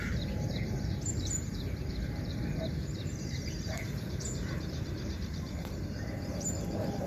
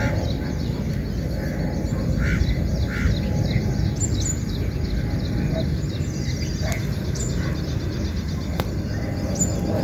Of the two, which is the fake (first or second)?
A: first